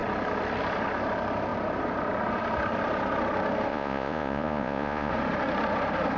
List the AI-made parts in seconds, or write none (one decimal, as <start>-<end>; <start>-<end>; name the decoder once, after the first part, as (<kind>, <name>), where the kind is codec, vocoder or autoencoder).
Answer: 3.7-5.1 (vocoder, Vocos)